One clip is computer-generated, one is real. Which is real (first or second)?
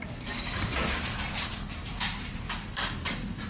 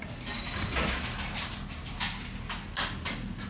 second